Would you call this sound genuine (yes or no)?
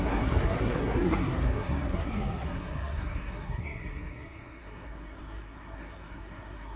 no